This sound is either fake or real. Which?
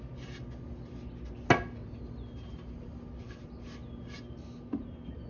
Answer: real